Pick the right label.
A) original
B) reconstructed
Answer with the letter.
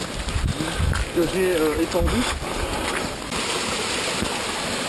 A